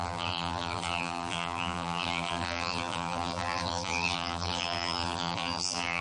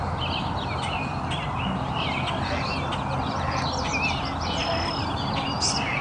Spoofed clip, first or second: first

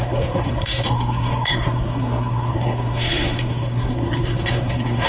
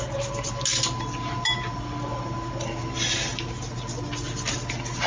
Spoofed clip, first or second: first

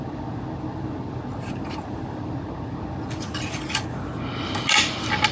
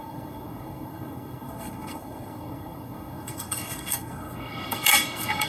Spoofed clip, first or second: second